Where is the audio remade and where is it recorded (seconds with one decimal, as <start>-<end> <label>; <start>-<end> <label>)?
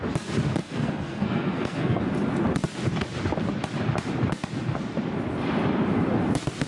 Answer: 0.0-0.6 recorded; 0.6-2.0 remade; 2.0-6.7 recorded